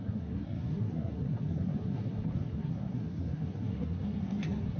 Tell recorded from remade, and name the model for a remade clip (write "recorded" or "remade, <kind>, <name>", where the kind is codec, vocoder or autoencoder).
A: remade, codec, SNAC